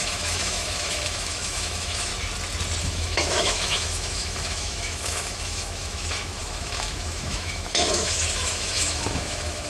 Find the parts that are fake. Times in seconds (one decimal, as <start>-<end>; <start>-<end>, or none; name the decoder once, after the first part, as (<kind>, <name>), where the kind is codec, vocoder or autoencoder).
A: 0.0-2.1 (autoencoder, DAC-VAE); 2.8-9.7